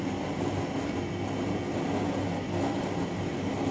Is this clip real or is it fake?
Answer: real